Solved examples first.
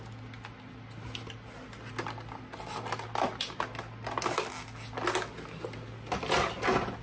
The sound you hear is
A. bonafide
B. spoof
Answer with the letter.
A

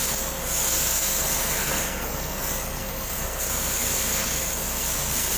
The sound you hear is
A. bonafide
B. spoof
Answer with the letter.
B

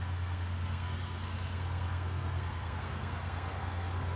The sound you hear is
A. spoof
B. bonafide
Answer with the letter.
A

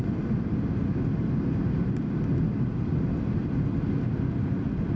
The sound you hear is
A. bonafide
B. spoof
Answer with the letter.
A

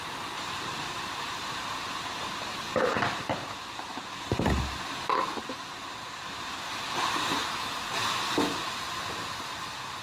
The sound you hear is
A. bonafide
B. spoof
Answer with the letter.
B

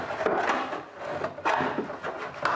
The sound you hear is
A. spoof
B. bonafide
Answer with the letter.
B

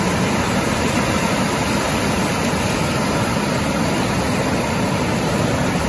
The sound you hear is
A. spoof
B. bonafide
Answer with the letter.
B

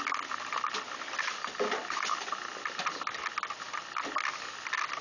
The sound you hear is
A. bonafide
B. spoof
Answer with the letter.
A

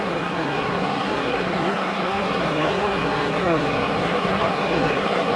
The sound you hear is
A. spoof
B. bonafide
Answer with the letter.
A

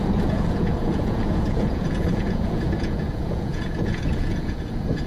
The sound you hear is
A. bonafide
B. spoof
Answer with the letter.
B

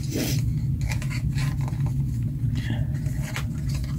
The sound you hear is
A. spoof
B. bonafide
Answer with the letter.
B